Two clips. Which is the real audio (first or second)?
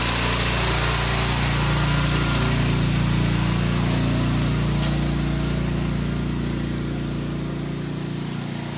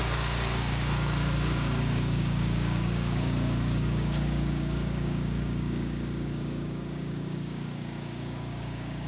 first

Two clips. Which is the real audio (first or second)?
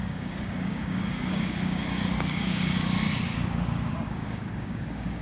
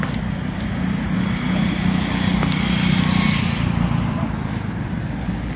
second